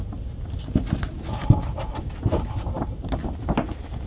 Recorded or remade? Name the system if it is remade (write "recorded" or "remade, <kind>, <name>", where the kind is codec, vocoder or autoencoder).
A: recorded